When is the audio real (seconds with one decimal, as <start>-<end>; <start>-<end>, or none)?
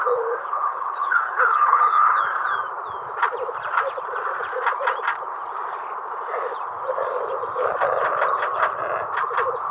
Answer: 0.0-0.4; 2.2-9.7